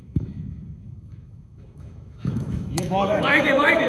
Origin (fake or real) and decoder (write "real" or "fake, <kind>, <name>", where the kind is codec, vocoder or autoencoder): fake, autoencoder, DAC-VAE